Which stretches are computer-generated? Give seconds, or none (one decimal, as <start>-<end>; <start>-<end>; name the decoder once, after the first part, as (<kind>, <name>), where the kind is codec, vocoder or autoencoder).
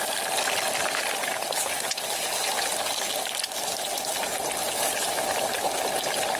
none